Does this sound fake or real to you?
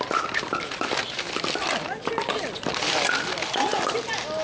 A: real